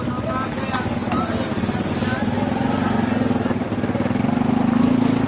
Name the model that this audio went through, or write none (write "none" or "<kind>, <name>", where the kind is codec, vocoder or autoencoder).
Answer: none